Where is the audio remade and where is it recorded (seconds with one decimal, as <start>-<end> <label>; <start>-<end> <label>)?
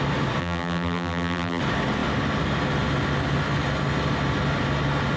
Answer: 0.0-0.4 recorded; 0.4-1.6 remade; 1.6-5.2 recorded